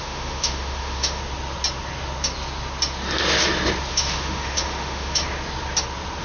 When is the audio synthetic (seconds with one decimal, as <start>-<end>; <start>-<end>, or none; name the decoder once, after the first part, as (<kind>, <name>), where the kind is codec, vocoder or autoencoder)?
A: 0.0-1.2 (autoencoder, DAC-VAE); 3.9-5.2